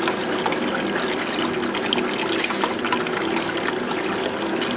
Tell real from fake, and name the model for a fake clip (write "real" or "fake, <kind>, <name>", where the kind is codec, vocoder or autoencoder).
real